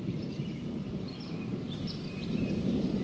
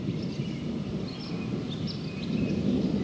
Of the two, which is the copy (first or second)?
first